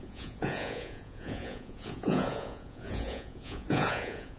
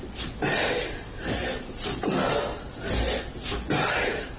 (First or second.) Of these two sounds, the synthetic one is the first